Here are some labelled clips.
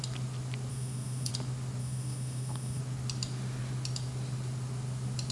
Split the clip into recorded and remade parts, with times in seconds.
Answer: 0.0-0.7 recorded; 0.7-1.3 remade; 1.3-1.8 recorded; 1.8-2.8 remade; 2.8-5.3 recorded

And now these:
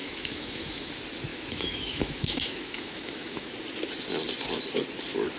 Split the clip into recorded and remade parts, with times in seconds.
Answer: 0.0-0.9 remade; 0.9-1.3 recorded; 1.3-3.5 remade; 3.5-5.4 recorded